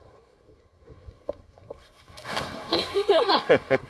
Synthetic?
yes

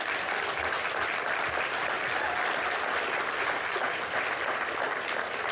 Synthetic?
no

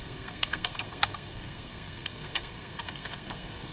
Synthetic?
yes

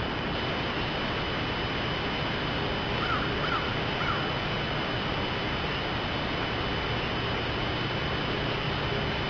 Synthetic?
no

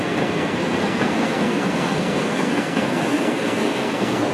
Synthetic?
yes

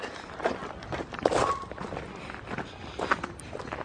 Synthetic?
no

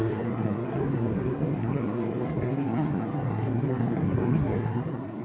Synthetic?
yes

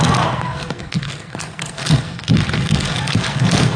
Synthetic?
yes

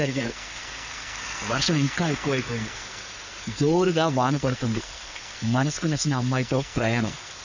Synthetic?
yes